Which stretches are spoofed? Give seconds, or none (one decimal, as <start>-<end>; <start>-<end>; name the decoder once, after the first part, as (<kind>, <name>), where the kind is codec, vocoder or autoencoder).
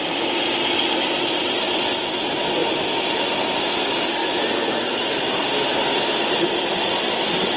4.2-7.0 (vocoder, BigVGAN v2)